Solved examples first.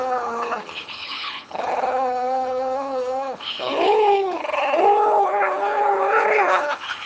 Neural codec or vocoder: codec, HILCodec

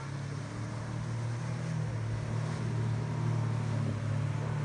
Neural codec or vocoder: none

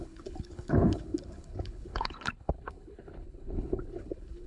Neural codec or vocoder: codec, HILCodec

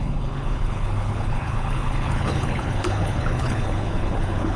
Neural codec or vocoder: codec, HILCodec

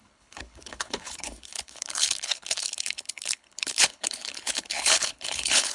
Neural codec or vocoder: codec, HILCodec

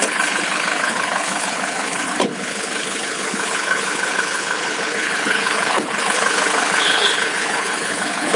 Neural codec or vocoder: codec, HILCodec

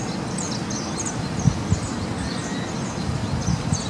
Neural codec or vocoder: none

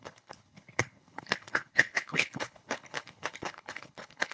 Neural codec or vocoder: codec, HILCodec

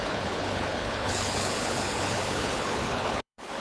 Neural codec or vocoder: codec, HILCodec